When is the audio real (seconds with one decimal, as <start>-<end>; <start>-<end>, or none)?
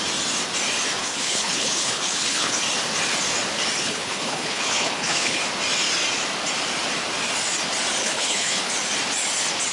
0.0-1.0; 2.6-3.8; 5.4-8.0; 8.7-9.7